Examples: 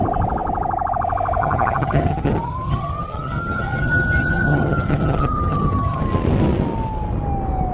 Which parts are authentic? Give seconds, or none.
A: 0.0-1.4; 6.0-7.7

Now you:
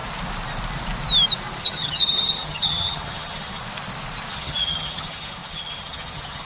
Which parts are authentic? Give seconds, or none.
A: 0.0-1.6; 3.6-4.3

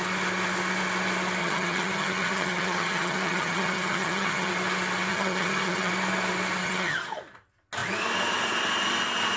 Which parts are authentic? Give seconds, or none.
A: 0.0-1.4; 4.5-5.1; 5.9-6.6; 7.2-9.4

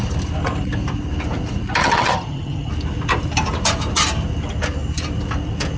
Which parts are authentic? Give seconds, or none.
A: 0.0-1.8; 2.7-5.8

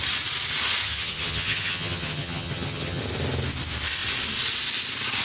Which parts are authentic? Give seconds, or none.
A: 0.0-0.8; 3.0-5.2